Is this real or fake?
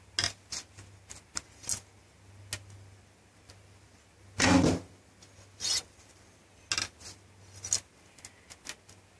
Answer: real